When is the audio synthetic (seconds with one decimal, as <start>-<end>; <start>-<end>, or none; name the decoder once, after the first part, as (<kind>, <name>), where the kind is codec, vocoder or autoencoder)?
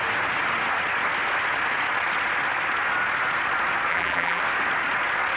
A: 3.9-4.4 (vocoder, BigVGAN v2)